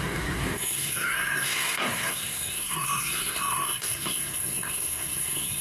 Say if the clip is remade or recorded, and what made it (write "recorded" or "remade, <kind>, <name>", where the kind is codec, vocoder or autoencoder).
remade, codec, SNAC